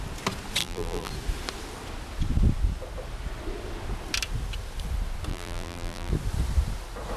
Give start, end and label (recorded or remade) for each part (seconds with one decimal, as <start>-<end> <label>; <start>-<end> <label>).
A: 0.0-0.6 recorded; 0.6-1.1 remade; 1.1-5.3 recorded; 5.3-6.1 remade; 6.1-7.2 recorded